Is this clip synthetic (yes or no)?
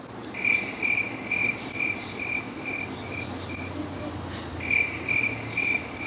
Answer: no